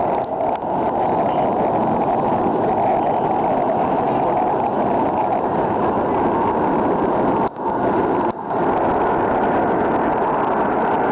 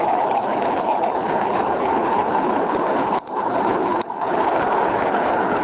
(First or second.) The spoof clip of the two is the second